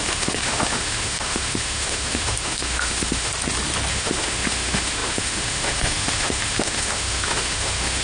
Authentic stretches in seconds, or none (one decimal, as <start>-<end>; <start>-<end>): 3.3-3.9